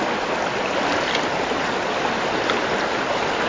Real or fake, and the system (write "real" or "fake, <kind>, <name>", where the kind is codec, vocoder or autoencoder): real